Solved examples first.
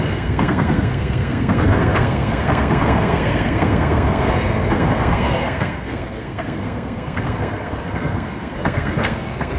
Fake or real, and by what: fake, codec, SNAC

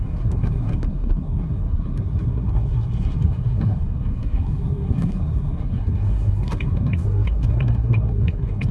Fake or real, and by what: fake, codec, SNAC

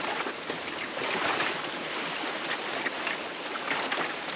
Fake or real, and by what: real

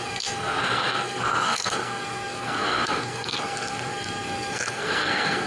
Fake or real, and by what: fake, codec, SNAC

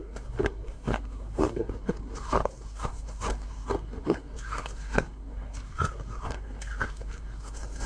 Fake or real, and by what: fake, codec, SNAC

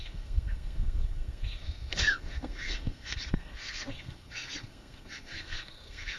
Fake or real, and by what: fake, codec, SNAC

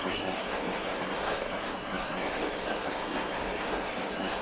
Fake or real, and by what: fake, codec, SNAC